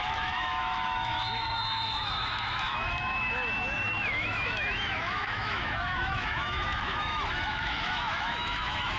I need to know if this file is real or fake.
fake